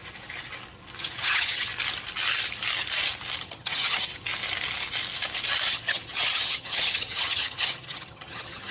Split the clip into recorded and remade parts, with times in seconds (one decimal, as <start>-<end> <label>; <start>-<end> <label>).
0.0-1.0 recorded; 1.0-1.7 remade; 1.7-3.4 recorded; 3.4-4.1 remade; 4.1-5.7 recorded; 5.7-8.7 remade